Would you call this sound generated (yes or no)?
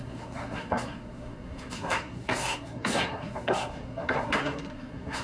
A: yes